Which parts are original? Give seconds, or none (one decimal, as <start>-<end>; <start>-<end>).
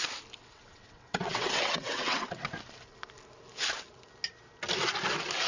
0.0-0.4; 2.5-5.5